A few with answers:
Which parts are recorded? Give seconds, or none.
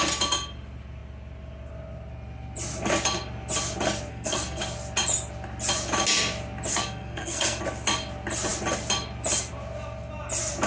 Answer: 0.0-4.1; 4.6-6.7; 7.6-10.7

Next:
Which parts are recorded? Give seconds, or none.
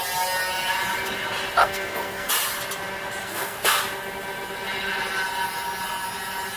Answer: 0.0-1.6; 2.3-3.2; 3.8-6.6